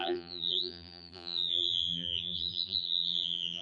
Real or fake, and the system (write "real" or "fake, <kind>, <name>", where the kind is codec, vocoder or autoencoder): fake, vocoder, BigVGAN v2